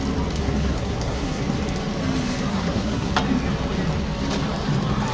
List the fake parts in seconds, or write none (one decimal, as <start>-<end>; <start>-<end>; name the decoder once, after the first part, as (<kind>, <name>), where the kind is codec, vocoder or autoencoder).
0.4-1.4 (codec, SNAC); 2.5-3.1